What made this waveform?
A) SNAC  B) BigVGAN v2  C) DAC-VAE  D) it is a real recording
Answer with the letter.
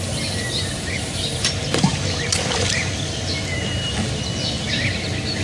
D